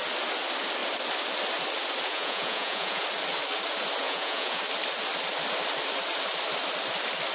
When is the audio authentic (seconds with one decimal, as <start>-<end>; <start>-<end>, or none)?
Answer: 0.0-2.1; 3.0-4.0; 4.6-7.3